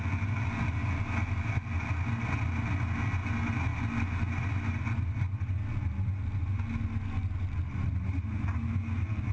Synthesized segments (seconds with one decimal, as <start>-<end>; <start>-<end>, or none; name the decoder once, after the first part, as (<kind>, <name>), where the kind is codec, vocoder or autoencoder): none